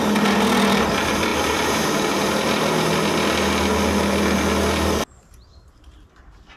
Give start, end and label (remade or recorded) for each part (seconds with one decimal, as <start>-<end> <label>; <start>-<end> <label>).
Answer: 0.0-6.6 recorded